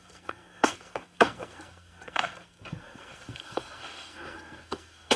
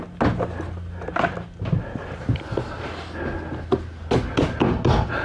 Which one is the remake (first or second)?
first